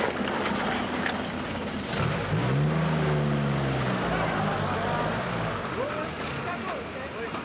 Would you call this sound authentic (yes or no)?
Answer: yes